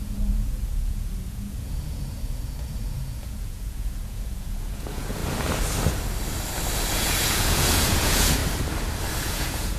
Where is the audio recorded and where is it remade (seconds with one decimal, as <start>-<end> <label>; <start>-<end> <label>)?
0.0-5.2 remade; 5.2-6.9 recorded; 6.9-8.4 remade; 8.4-9.2 recorded; 9.2-9.8 remade